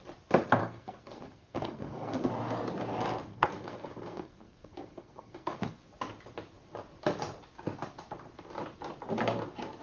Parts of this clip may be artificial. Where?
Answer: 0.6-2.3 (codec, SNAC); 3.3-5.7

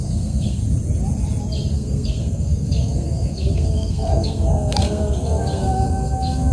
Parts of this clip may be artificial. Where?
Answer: 0.0-0.6 (codec, SNAC); 1.7-6.5

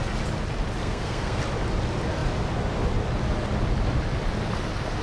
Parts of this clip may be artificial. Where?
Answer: 0.8-1.4 (codec, SNAC)

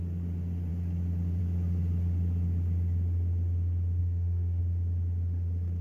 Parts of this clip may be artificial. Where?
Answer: 4.0-4.6 (codec, SNAC)

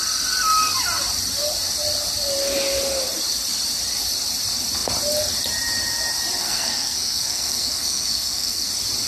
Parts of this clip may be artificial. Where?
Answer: 6.4-8.7 (codec, SNAC)

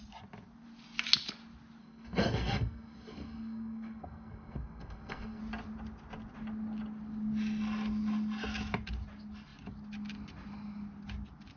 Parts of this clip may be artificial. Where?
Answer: 1.8-5.4 (codec, SNAC)

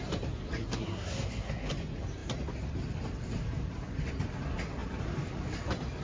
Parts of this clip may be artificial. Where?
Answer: 0.6-1.7 (codec, SNAC)

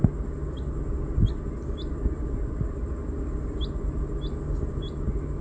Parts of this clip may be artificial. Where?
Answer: none